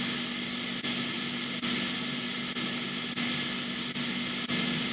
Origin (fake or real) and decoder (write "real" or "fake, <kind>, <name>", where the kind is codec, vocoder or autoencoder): real